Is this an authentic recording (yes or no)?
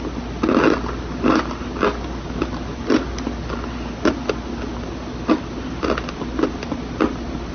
yes